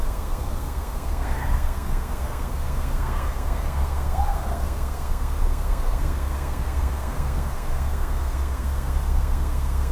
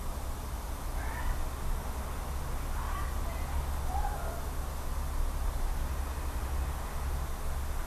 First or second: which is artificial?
first